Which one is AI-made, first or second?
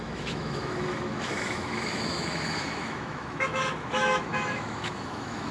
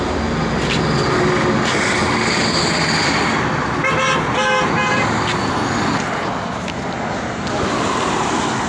first